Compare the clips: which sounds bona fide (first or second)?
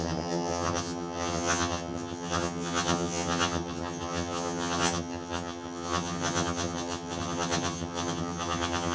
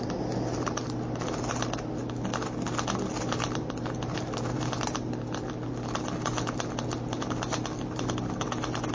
second